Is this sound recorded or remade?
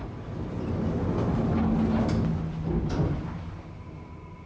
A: recorded